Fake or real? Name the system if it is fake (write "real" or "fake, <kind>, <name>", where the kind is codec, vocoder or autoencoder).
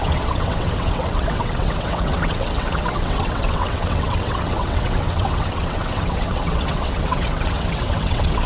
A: fake, vocoder, WaveNeXt